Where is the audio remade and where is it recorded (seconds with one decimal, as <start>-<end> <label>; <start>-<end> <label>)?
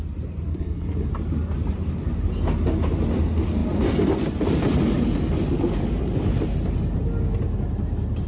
0.0-0.5 recorded; 0.5-1.1 remade; 1.1-8.3 recorded